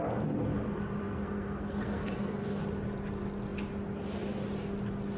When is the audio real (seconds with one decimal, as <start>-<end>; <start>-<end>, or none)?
0.0-1.0; 2.6-5.2

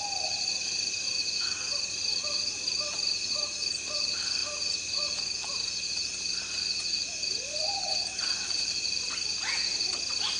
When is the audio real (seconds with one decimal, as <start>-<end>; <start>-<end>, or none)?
0.0-10.4

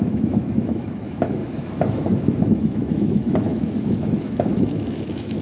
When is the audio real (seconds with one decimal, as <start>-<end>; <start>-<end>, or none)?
none

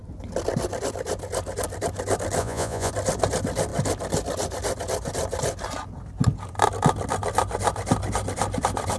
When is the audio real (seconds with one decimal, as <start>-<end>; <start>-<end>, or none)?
0.0-2.4; 2.9-9.0

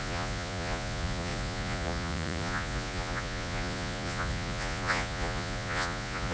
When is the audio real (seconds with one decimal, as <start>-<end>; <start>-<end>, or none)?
none

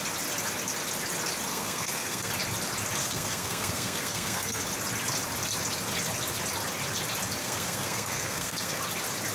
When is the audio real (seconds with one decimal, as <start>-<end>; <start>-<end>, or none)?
0.0-1.5; 2.3-3.0; 4.6-7.4; 8.8-9.3

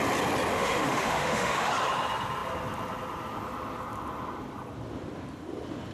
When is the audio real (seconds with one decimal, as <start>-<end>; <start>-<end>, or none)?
0.0-0.5; 1.7-5.9